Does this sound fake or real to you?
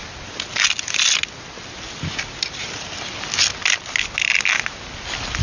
real